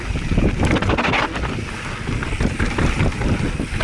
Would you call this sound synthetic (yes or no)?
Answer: no